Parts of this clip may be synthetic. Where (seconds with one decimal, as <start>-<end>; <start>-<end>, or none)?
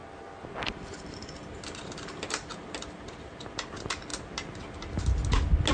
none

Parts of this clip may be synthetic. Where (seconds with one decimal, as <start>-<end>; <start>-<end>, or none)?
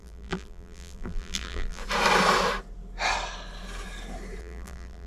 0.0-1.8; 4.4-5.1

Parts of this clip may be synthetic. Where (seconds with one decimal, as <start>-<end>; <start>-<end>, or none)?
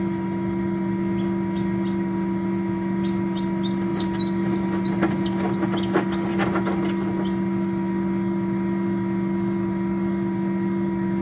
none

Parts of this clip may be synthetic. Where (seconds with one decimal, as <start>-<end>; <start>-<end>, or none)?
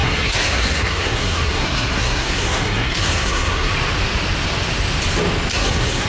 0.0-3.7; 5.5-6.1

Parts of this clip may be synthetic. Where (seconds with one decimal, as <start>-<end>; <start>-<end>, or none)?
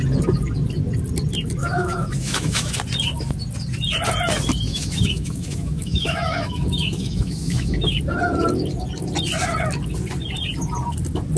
1.6-2.7; 4.7-8.0